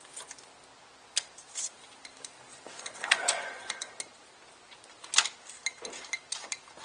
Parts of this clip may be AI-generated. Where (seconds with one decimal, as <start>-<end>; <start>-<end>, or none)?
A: 2.5-4.0